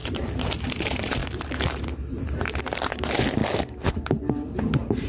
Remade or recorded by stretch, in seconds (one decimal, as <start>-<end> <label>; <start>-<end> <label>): 0.0-3.4 remade; 3.4-4.3 recorded; 4.3-5.1 remade